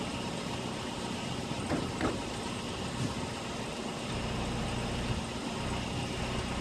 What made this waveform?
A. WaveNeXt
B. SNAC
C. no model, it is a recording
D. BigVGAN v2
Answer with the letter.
C